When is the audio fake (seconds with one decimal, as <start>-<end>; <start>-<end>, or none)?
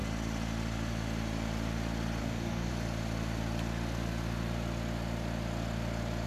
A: 2.2-2.7